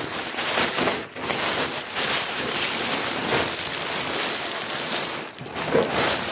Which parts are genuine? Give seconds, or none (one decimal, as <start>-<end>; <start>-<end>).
0.9-1.8; 3.3-4.7